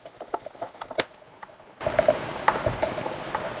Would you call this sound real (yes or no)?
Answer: yes